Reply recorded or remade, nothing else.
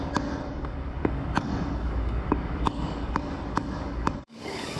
remade